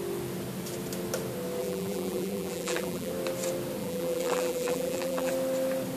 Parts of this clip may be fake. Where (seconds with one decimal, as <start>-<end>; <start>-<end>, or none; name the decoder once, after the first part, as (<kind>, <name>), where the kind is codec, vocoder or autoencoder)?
1.6-3.1 (vocoder, BigVGAN v2); 3.8-5.3